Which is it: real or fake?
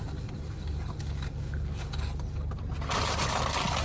real